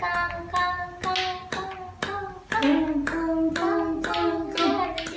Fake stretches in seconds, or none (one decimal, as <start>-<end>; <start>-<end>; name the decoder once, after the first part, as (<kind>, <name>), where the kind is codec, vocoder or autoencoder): none